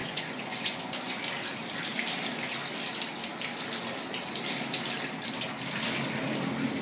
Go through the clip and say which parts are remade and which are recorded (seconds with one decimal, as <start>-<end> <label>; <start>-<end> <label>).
0.0-1.2 remade; 1.2-6.8 recorded

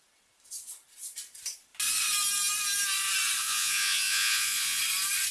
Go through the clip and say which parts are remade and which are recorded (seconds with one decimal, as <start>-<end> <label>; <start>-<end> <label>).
0.0-3.4 recorded; 3.4-4.8 remade; 4.8-5.3 recorded

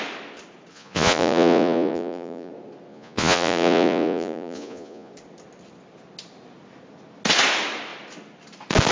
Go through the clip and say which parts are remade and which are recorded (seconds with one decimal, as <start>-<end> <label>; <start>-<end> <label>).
0.0-0.7 recorded; 0.7-2.5 remade; 2.5-2.9 recorded; 2.9-5.1 remade; 5.1-8.9 recorded

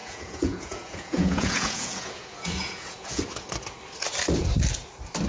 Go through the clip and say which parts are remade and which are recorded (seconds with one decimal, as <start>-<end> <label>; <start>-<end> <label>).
0.0-3.2 remade; 3.2-5.3 recorded

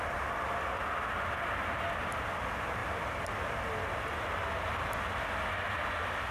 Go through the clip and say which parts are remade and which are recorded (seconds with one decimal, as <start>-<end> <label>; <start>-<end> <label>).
0.0-6.3 recorded